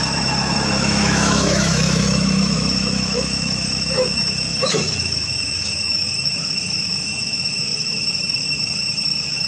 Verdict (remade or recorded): remade